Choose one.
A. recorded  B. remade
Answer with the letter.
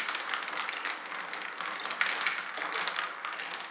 A